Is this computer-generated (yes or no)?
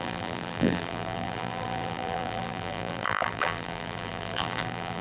yes